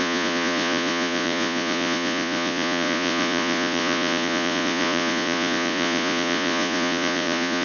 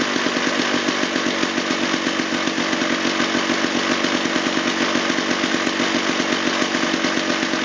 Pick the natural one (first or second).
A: second